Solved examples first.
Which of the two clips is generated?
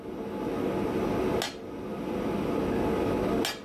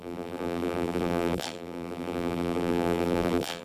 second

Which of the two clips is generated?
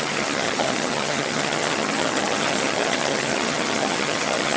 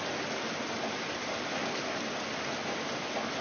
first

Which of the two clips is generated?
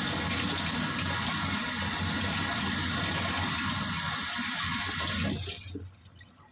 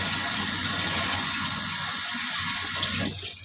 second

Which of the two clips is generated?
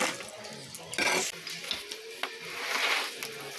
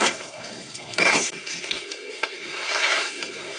second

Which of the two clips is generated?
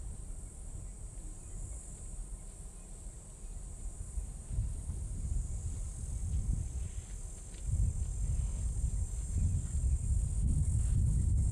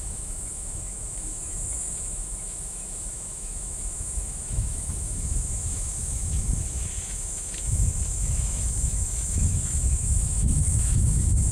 second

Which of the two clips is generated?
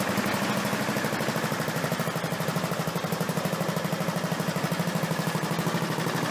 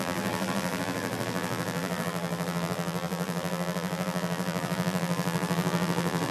second